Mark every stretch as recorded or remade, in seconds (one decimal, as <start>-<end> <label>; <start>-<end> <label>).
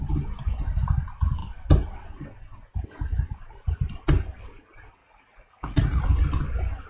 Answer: 0.0-5.0 recorded; 5.0-6.0 remade; 6.0-6.9 recorded